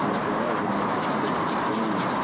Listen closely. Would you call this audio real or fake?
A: real